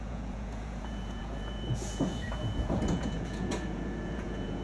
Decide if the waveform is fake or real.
fake